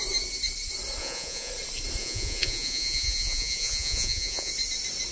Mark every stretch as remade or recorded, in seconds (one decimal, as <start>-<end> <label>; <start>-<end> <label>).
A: 0.0-1.0 recorded; 1.0-1.5 remade; 1.5-2.0 recorded; 2.0-4.5 remade; 4.5-5.1 recorded